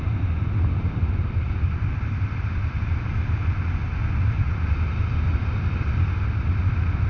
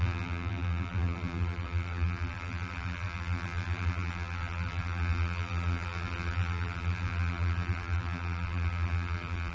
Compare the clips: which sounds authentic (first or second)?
first